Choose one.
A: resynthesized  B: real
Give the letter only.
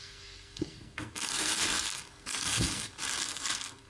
A